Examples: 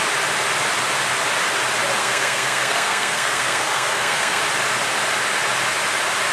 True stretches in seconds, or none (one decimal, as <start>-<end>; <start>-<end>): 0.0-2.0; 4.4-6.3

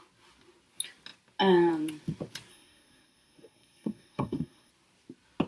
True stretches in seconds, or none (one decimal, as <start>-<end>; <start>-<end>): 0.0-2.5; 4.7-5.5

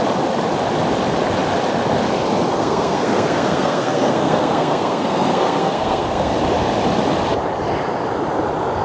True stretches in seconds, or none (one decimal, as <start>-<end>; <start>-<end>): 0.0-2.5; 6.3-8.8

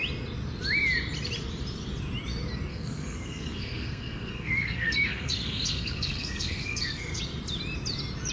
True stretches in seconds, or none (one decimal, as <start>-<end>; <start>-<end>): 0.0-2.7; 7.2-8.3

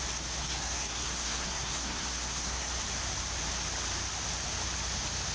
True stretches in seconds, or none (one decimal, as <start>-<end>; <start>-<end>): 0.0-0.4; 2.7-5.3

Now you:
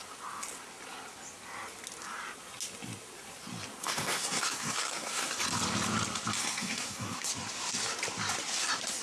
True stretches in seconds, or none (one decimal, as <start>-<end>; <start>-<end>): 0.0-3.8; 5.3-6.4; 7.3-9.0

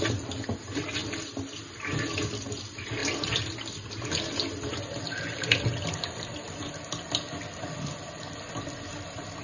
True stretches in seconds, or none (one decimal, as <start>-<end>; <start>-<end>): 0.0-9.4